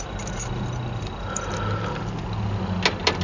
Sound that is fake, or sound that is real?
real